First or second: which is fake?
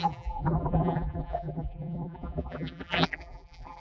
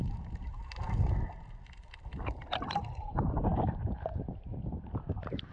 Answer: first